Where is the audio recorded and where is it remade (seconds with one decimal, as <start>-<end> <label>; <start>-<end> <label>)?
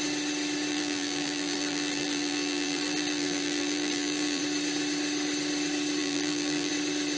0.0-0.7 recorded; 0.7-4.4 remade; 4.4-6.0 recorded; 6.0-6.7 remade; 6.7-7.2 recorded